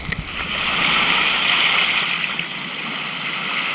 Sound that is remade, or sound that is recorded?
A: recorded